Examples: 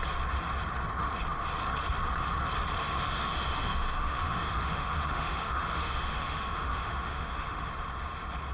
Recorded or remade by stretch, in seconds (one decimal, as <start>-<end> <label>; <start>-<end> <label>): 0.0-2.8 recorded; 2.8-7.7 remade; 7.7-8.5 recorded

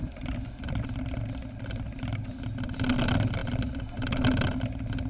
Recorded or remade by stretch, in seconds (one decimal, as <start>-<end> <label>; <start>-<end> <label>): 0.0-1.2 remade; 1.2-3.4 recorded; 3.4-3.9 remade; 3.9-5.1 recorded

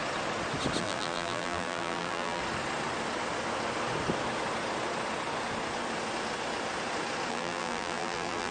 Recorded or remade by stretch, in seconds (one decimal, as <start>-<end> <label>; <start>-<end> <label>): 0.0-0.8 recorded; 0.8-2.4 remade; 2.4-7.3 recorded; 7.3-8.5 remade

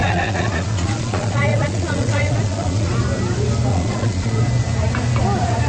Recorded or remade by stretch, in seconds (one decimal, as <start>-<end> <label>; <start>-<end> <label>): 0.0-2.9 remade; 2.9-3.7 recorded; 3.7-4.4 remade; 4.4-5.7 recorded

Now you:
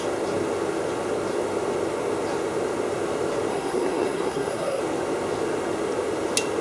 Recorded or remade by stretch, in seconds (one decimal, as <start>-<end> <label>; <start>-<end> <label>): 0.0-3.5 recorded; 3.5-4.8 remade; 4.8-6.6 recorded